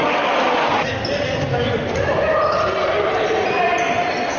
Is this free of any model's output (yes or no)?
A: yes